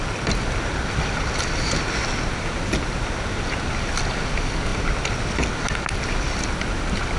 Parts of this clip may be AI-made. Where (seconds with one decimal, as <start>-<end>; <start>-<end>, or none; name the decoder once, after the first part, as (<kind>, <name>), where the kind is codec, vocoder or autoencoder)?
none